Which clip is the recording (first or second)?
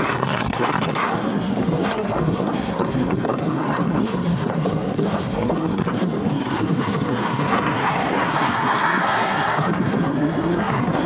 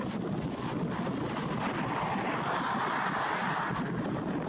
second